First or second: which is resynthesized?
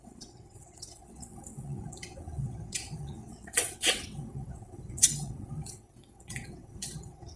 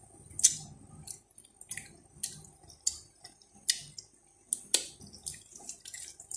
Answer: first